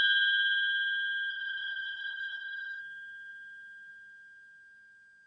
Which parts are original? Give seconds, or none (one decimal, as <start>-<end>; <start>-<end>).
0.0-1.3; 2.8-5.3